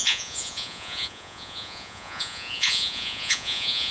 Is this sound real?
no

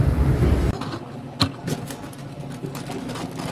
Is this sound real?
yes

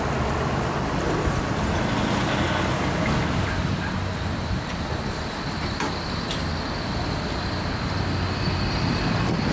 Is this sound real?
yes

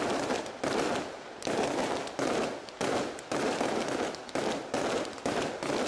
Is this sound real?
yes